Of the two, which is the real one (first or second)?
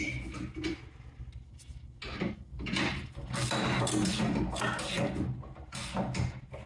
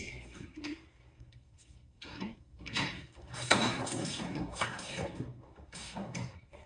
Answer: first